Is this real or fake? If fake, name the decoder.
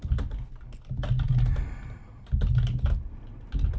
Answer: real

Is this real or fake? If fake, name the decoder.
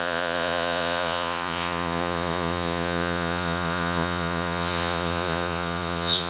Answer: fake, vocoder, Vocos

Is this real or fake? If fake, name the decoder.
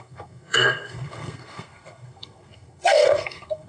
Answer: fake, codec, SNAC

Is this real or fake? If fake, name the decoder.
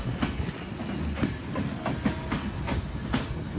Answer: real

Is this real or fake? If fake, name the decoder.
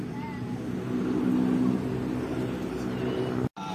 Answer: real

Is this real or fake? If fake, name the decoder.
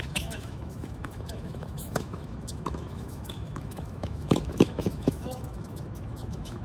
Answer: fake, autoencoder, DAC-VAE